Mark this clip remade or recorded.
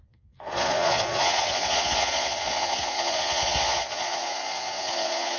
remade